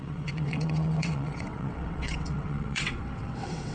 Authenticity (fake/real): fake